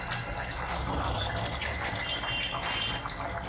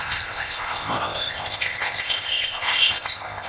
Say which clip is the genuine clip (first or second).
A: first